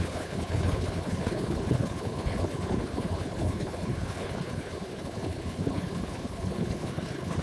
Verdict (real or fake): fake